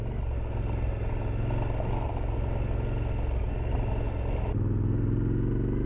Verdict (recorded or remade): recorded